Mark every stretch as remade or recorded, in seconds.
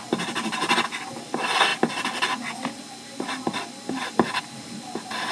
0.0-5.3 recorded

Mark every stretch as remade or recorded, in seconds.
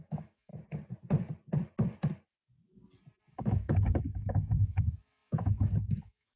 0.0-0.5 remade; 0.5-3.3 recorded; 3.3-6.4 remade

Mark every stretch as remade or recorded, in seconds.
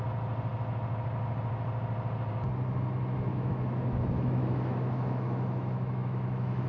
0.0-3.3 recorded; 3.3-6.7 remade